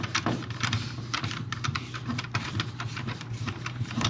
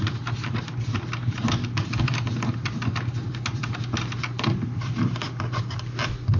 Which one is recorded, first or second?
second